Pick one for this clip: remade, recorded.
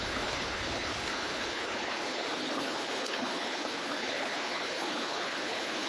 remade